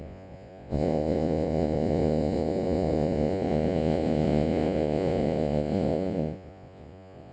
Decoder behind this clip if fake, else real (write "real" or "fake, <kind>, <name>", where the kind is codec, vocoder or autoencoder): fake, vocoder, Vocos